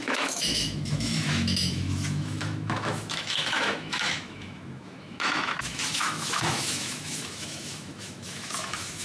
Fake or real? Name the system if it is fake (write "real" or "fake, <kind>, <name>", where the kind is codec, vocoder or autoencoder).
fake, autoencoder, DAC-VAE